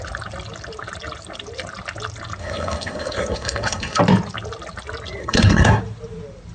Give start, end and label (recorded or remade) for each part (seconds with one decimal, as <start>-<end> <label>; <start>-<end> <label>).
0.0-2.4 recorded; 2.4-4.0 remade; 4.0-5.2 recorded; 5.2-5.8 remade; 5.8-6.5 recorded